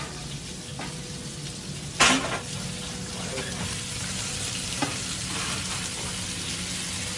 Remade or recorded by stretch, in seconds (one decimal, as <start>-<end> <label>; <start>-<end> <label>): 0.0-7.2 recorded